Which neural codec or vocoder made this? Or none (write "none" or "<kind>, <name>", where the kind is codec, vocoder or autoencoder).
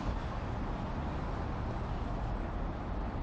none